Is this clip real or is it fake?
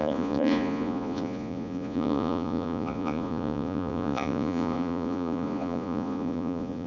fake